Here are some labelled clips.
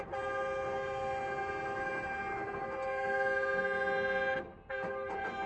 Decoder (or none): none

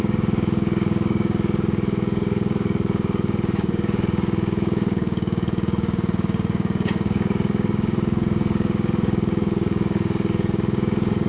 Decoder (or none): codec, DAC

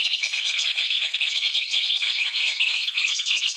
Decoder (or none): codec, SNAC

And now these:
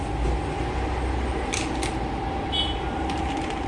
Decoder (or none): none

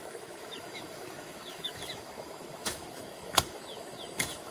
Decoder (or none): autoencoder, DAC-VAE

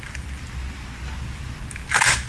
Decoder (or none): none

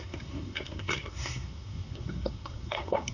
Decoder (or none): codec, SNAC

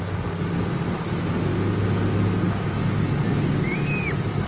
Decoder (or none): none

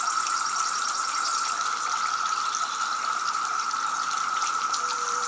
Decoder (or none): vocoder, BigVGAN v2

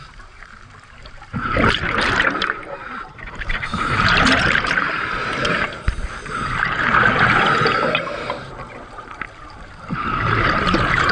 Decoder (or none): vocoder, BigVGAN v2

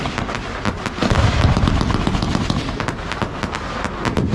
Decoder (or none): none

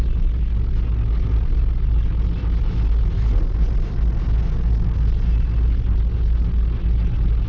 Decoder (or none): none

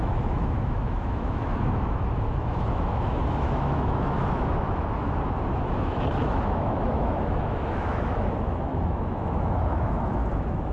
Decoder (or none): autoencoder, DAC-VAE